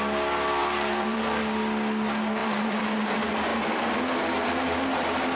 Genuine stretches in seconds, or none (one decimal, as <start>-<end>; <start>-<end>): 0.0-0.6; 1.4-2.4; 3.0-5.4